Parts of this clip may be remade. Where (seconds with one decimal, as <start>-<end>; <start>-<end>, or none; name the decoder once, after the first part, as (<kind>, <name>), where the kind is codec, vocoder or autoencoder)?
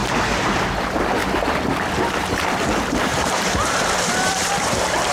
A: 0.0-1.2 (vocoder, BigVGAN v2); 3.0-5.1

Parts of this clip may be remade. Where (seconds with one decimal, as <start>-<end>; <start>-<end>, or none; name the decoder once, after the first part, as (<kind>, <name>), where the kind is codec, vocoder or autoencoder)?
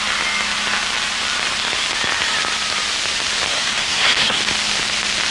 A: 3.5-4.4 (codec, SNAC)